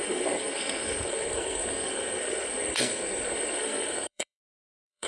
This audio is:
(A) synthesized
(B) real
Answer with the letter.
A